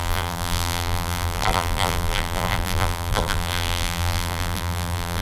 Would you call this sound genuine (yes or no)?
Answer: no